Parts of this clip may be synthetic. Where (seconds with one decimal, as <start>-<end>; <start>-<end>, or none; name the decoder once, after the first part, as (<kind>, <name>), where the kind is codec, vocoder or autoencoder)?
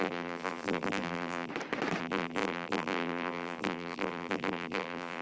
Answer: 0.0-1.5 (vocoder, BigVGAN v2); 2.0-5.2